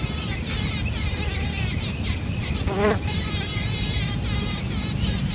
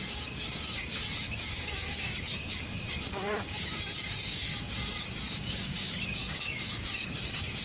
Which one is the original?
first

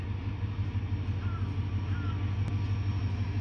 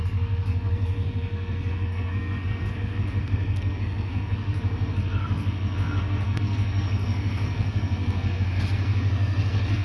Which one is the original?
first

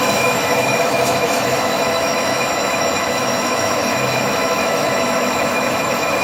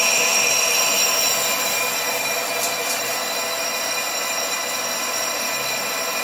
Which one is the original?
second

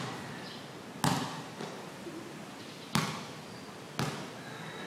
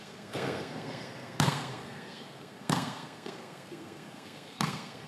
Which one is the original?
first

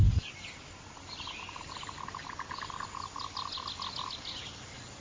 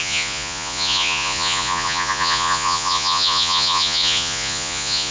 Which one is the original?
first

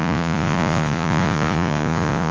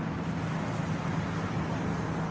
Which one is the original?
second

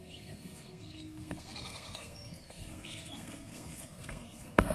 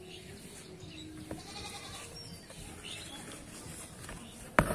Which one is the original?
second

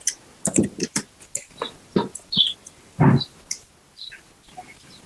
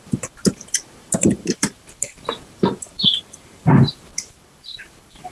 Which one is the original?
first